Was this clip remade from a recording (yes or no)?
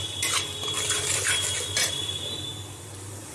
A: no